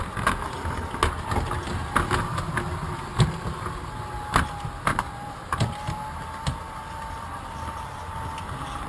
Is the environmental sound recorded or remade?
recorded